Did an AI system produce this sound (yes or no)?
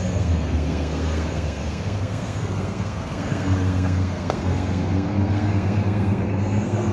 yes